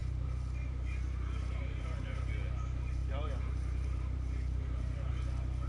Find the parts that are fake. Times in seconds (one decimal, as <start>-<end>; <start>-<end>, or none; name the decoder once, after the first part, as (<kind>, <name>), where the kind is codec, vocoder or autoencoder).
0.0-2.3 (vocoder, BigVGAN v2); 3.0-5.1